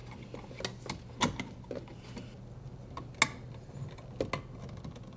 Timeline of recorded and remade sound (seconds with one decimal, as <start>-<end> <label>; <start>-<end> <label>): 0.0-5.2 recorded